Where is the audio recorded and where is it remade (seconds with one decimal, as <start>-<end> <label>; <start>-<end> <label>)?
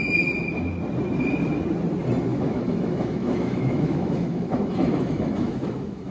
0.0-2.3 recorded; 2.3-6.1 remade